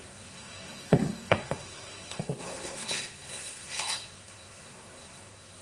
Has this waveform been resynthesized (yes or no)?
yes